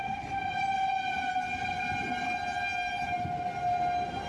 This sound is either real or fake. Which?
real